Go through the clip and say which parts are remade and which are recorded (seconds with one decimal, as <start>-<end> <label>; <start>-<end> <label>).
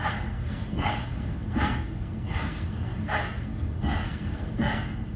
0.0-5.2 remade